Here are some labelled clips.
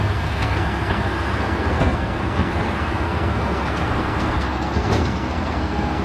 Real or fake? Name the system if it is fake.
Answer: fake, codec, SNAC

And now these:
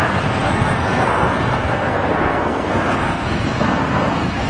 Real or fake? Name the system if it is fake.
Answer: fake, codec, SNAC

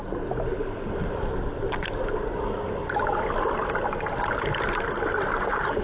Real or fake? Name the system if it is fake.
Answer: real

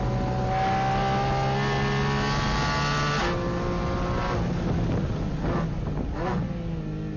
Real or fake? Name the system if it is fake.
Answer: real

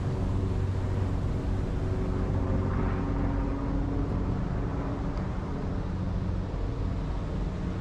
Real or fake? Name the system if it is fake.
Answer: real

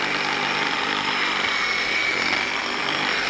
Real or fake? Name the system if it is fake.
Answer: real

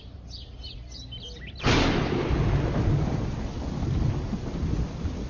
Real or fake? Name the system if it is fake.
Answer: real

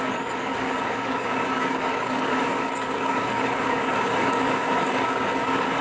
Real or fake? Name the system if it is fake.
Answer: fake, codec, DAC